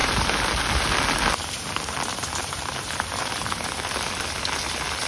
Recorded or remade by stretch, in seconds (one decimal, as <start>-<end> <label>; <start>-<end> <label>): 0.0-0.9 remade; 0.9-2.1 recorded; 2.1-3.3 remade; 3.3-5.1 recorded